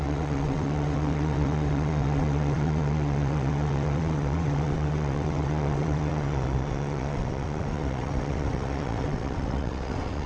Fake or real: fake